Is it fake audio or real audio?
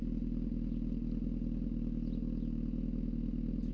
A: real